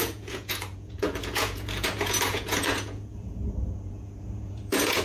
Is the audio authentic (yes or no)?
no